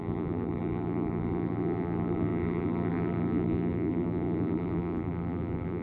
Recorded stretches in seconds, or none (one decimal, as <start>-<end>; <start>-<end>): none